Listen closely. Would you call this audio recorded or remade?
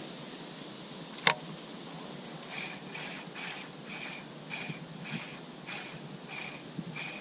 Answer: recorded